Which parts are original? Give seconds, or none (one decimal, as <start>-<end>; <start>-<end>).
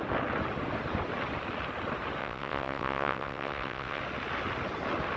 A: 0.0-2.2; 4.0-5.2